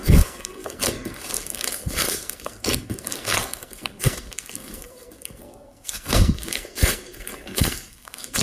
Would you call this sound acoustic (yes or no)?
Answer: no